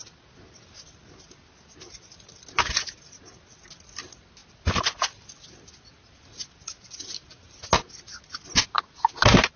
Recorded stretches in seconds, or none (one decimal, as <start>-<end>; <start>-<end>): 0.0-9.6